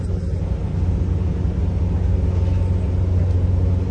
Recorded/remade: recorded